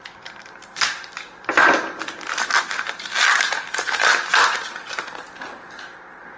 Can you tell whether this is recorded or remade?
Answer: recorded